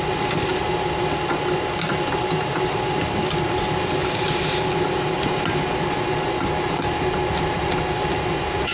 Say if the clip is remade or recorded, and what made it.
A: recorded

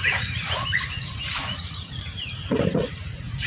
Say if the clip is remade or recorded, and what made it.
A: remade, vocoder, Vocos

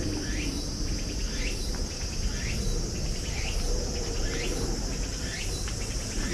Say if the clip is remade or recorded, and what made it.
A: recorded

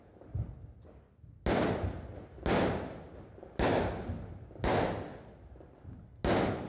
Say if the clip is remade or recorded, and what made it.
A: recorded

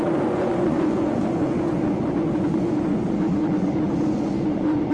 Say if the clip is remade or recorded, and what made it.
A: remade, vocoder, Vocos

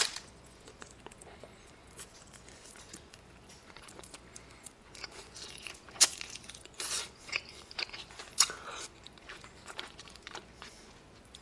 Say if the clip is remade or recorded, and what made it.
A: remade, vocoder, Vocos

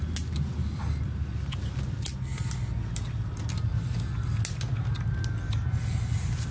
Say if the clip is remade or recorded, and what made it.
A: recorded